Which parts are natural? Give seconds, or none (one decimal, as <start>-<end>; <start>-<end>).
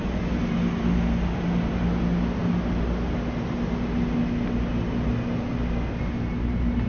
0.0-6.9